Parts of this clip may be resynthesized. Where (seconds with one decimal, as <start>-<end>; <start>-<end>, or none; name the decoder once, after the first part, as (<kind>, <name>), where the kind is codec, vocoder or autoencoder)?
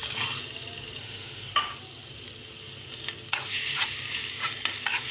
1.0-1.7 (autoencoder, DAC-VAE)